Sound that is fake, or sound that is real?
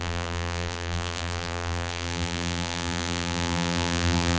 fake